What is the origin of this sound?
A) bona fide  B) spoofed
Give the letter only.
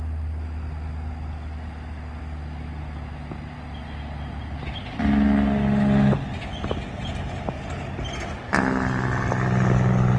A